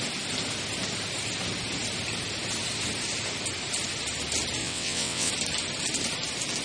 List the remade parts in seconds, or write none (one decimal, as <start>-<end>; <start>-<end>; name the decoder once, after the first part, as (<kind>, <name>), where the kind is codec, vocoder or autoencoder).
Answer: 4.6-5.3 (vocoder, WaveNeXt)